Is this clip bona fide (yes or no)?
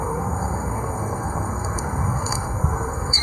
no